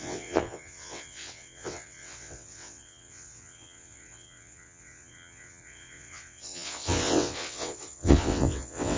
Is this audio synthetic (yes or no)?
yes